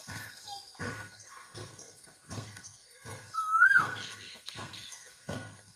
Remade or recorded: remade